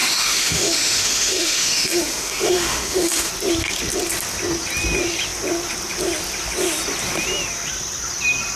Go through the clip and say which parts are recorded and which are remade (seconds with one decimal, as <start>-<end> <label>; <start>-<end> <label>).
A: 0.0-3.3 remade; 3.3-8.6 recorded